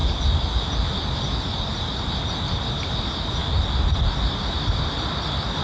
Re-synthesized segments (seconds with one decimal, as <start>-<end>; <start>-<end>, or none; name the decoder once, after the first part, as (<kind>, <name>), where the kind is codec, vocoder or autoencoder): none